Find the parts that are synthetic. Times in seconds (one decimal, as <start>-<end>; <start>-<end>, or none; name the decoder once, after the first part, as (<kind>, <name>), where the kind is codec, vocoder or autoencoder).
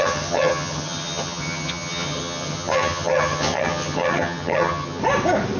0.0-5.0 (vocoder, HiFi-GAN)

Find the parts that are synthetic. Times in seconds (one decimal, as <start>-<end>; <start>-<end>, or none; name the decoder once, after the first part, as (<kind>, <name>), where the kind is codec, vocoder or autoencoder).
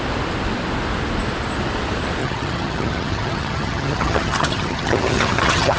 2.2-5.8 (vocoder, HiFi-GAN)